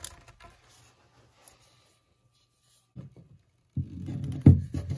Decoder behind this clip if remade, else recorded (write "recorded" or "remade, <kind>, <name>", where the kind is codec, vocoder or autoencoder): recorded